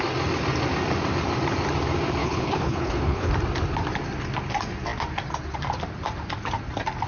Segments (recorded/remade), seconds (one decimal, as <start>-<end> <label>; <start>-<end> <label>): 0.0-2.2 recorded; 2.2-3.3 remade; 3.3-7.1 recorded